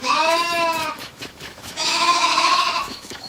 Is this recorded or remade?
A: remade